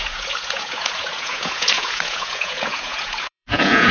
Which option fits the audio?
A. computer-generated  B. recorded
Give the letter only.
A